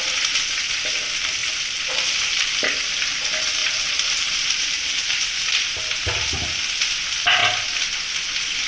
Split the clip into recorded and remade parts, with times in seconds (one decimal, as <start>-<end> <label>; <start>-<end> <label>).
0.0-1.4 recorded; 1.4-2.6 remade; 2.6-3.6 recorded; 3.6-5.2 remade; 5.2-8.7 recorded